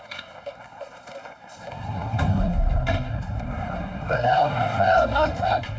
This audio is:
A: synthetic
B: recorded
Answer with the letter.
A